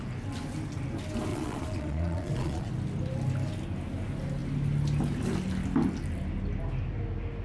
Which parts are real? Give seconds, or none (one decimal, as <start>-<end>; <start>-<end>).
0.0-1.3; 2.7-7.4